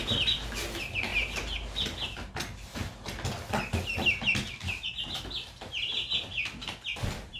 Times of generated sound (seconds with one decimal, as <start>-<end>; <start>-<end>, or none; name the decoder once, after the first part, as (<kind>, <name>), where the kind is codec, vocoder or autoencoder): none